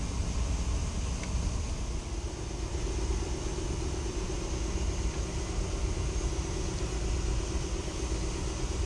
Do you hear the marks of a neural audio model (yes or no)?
no